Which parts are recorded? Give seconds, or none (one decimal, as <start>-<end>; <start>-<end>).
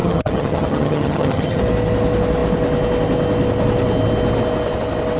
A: 1.6-5.2